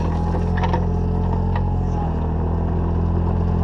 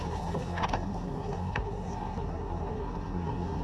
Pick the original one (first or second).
first